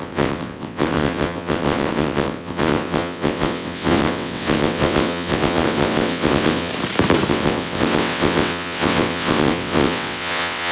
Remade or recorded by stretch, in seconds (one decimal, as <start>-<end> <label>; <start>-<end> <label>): 0.0-6.7 remade; 6.7-7.3 recorded; 7.3-10.7 remade